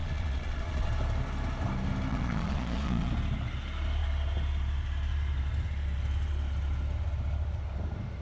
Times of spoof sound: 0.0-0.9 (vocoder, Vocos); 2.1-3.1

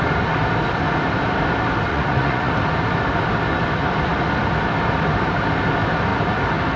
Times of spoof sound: 1.9-2.5 (vocoder, Vocos)

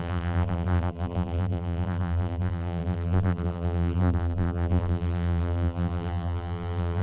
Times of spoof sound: 0.0-7.0 (vocoder, BigVGAN v2)

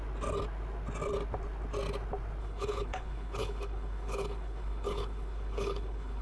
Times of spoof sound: 2.4-6.2 (codec, HILCodec)

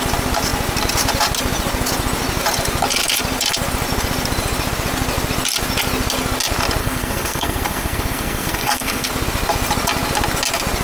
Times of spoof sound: 6.8-9.1 (codec, SNAC)

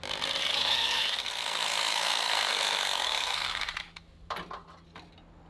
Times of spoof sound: 0.4-3.7 (codec, SNAC)

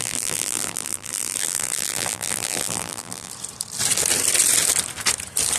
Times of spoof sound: 0.0-3.3 (vocoder, BigVGAN v2)